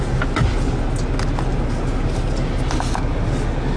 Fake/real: real